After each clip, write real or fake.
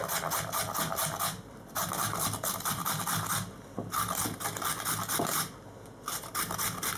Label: real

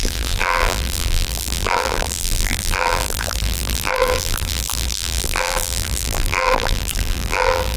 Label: fake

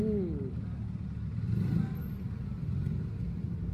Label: real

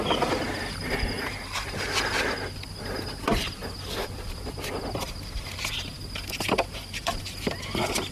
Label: real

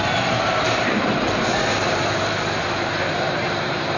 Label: fake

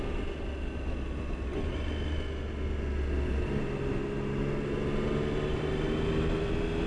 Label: real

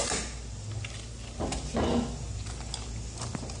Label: real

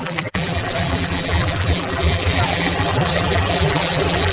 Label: fake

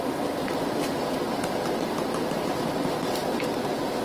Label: real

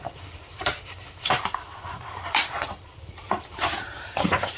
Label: fake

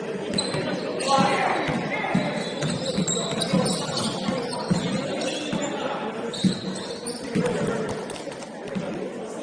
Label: real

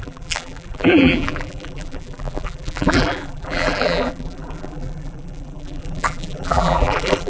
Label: fake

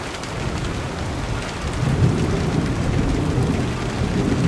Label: real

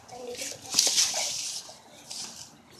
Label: real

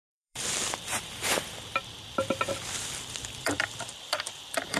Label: fake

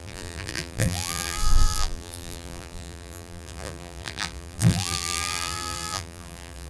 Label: fake